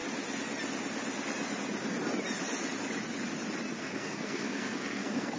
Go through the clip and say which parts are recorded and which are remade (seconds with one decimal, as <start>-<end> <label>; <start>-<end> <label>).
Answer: 0.0-3.8 recorded; 3.8-5.4 remade